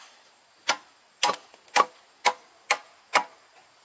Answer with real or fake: real